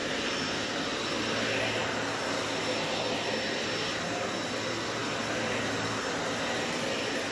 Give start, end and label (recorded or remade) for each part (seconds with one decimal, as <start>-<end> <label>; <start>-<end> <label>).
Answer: 0.0-0.8 remade; 0.8-7.3 recorded